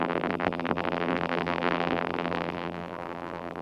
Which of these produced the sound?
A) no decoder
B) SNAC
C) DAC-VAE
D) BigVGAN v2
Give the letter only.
D